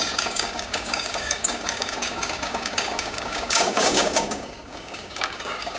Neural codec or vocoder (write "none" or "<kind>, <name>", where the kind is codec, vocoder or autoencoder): codec, DAC